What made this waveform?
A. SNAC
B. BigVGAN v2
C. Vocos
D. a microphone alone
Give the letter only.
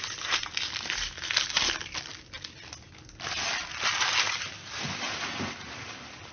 D